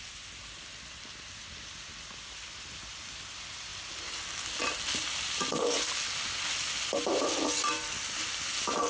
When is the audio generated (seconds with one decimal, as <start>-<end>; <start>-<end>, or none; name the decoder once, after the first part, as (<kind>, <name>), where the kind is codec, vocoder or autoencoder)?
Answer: none